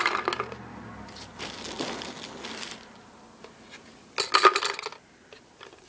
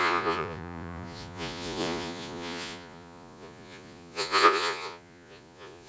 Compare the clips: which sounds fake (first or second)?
second